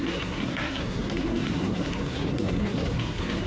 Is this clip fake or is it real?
fake